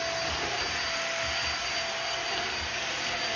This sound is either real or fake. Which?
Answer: real